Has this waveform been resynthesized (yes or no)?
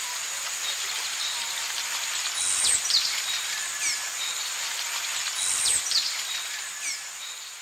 no